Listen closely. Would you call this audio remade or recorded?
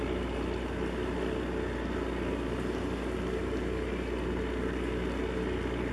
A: recorded